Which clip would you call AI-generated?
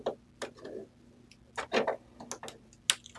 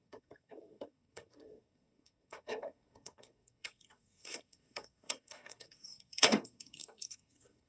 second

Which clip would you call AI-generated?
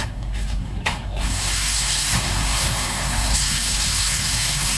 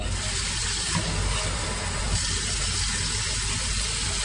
first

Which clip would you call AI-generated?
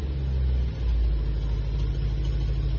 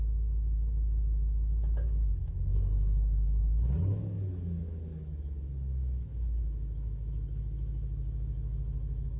second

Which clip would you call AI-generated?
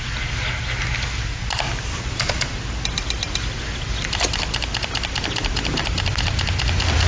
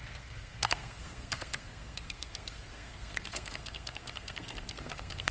second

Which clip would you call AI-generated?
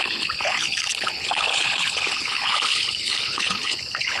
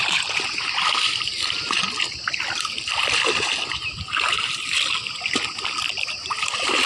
first